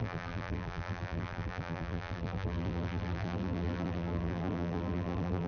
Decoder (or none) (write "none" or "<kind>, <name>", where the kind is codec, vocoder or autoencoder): vocoder, BigVGAN v2